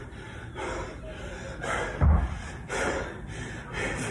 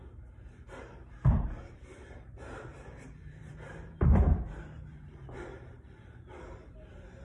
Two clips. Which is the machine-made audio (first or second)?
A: second